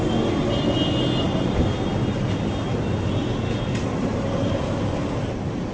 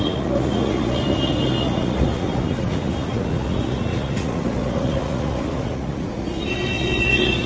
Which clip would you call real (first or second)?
first